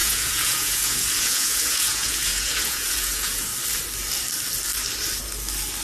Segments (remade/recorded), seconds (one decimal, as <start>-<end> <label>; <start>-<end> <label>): 0.0-3.5 remade; 3.5-5.8 recorded